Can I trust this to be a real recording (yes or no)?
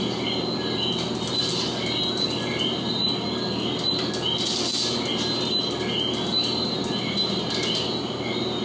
yes